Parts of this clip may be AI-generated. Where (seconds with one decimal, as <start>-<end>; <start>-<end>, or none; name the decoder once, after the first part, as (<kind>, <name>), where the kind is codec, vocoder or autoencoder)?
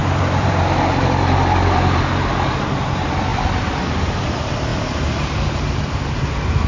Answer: 0.0-2.0 (vocoder, BigVGAN v2); 3.3-4.2